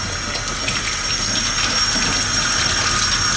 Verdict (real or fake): real